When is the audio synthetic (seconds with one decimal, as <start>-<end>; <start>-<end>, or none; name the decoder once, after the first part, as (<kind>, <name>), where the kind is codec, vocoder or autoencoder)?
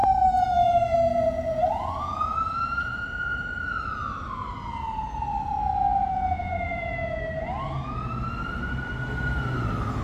0.0-3.5 (vocoder, Vocos); 5.9-7.2